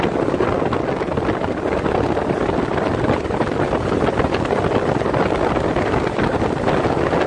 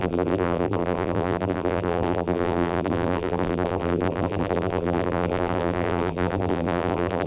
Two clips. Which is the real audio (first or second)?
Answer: first